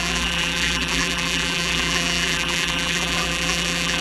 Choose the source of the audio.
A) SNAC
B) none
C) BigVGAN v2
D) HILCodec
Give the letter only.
C